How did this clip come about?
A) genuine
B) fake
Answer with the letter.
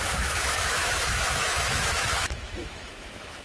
B